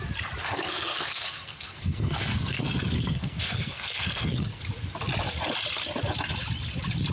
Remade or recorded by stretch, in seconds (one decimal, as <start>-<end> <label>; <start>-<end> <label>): 0.0-0.4 recorded; 0.4-4.6 remade; 4.6-7.1 recorded